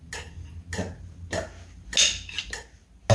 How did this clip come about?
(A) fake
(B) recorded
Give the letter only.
B